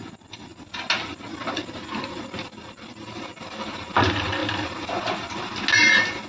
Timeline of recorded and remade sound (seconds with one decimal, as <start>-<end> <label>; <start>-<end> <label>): 0.0-6.3 recorded